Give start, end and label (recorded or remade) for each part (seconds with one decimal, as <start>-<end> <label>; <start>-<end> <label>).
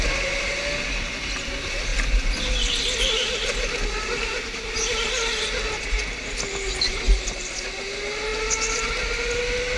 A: 0.0-9.8 recorded